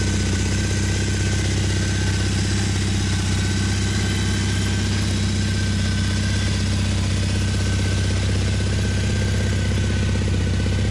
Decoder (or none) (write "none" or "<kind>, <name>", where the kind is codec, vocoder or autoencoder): none